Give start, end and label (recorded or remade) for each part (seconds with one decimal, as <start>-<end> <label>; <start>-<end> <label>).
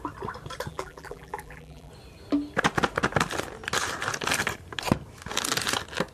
0.0-0.7 recorded; 0.7-1.9 remade; 1.9-6.1 recorded